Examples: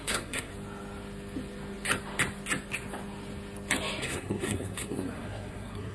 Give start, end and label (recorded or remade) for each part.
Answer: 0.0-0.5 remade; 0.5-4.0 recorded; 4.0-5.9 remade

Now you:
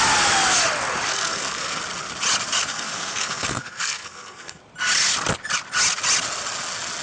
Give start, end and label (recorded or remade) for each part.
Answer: 0.0-1.1 recorded; 1.1-1.8 remade; 1.8-2.6 recorded; 2.6-4.6 remade; 4.6-7.0 recorded

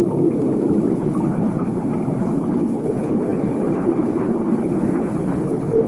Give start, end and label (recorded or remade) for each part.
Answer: 0.0-0.9 recorded; 0.9-1.7 remade; 1.7-2.2 recorded; 2.2-5.9 remade

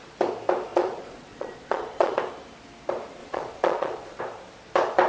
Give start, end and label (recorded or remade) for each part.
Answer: 0.0-0.7 recorded; 0.7-2.2 remade; 2.2-3.2 recorded; 3.2-4.2 remade; 4.2-5.1 recorded

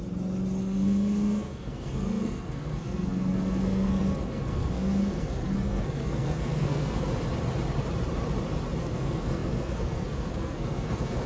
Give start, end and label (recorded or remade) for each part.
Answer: 0.0-0.6 recorded; 0.6-7.1 remade; 7.1-8.8 recorded; 8.8-11.3 remade